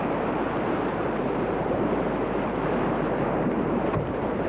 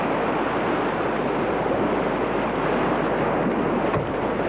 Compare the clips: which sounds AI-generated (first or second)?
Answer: first